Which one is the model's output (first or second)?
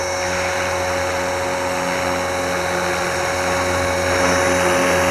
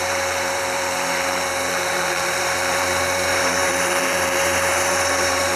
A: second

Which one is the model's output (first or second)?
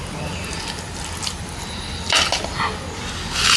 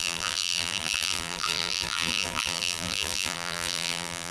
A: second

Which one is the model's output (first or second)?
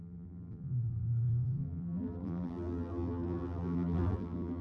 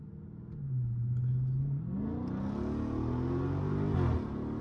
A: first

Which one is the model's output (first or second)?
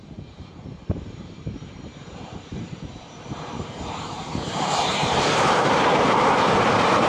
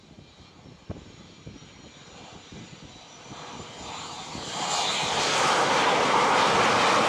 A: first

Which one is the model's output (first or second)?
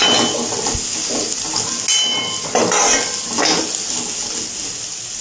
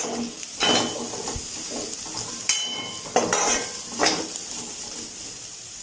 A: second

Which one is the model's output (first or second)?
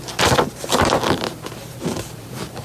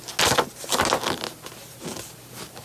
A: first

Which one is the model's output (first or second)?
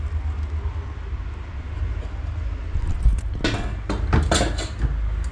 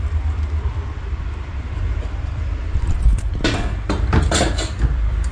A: second